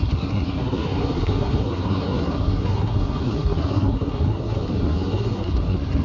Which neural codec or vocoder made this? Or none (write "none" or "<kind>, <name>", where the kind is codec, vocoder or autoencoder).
codec, SNAC